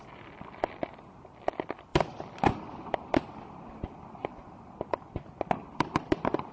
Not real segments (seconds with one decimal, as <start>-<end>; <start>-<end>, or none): none